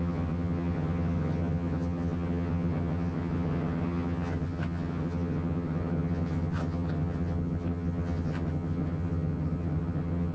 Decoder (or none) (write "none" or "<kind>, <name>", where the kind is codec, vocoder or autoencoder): vocoder, HiFi-GAN